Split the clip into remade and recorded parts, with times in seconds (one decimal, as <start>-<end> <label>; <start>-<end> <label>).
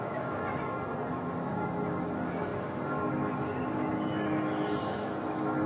0.0-0.4 remade; 0.4-1.1 recorded; 1.1-5.7 remade